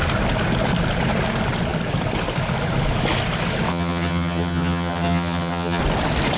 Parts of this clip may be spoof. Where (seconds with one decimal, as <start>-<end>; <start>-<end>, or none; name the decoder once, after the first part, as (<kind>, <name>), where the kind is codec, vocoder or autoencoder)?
3.7-5.8 (vocoder, HiFi-GAN)